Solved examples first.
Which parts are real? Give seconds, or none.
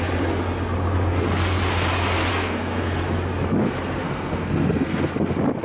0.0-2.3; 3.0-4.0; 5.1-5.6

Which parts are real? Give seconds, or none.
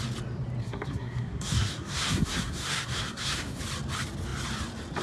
0.0-0.6; 3.6-5.0